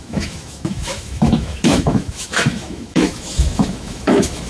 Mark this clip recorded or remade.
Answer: remade